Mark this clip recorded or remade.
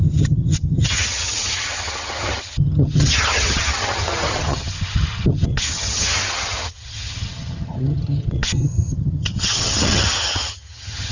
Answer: remade